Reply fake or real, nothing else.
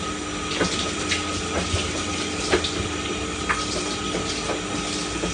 real